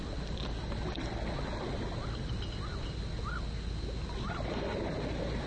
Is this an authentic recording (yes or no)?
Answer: yes